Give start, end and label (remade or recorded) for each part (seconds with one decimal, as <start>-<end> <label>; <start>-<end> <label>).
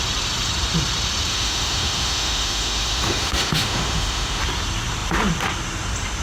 0.0-1.3 recorded; 1.3-4.4 remade; 4.4-6.2 recorded